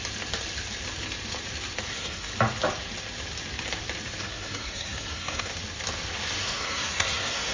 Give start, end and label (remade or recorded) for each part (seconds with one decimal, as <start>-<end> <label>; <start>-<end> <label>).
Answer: 0.0-1.9 recorded; 1.9-2.3 remade; 2.3-4.2 recorded; 4.2-5.5 remade; 5.5-6.4 recorded; 6.4-7.5 remade